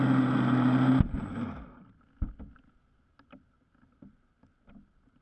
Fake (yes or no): no